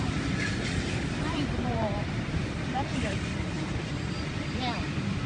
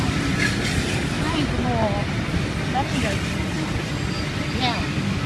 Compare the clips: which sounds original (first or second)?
second